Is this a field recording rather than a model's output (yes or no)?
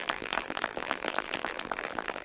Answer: no